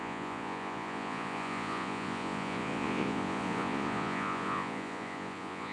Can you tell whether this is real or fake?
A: fake